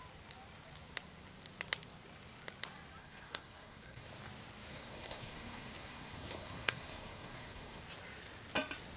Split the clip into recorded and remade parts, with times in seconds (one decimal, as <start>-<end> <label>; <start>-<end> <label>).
0.0-3.0 recorded; 3.0-4.1 remade; 4.1-4.7 recorded; 4.7-7.8 remade; 7.8-9.0 recorded